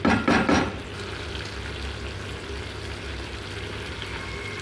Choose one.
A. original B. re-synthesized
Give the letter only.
A